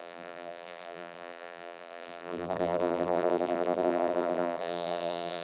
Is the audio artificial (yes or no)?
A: yes